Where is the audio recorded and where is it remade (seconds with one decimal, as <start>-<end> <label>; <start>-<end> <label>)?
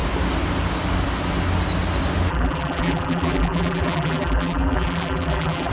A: 0.0-2.3 recorded; 2.3-5.7 remade